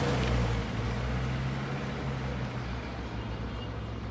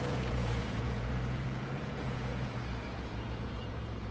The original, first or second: first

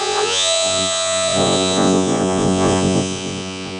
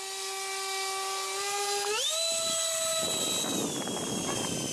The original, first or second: second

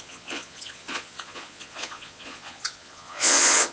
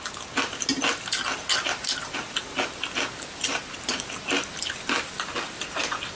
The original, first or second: second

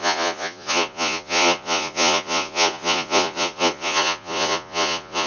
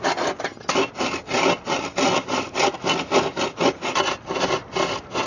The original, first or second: second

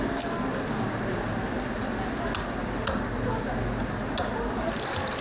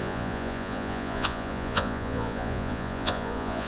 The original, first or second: first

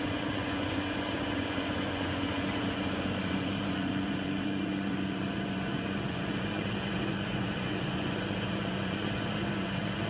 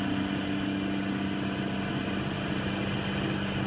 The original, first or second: second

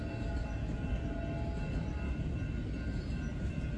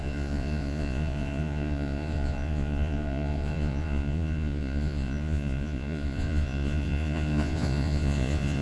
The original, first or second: first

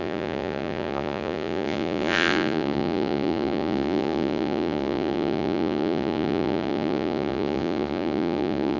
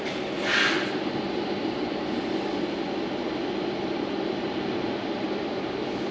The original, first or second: second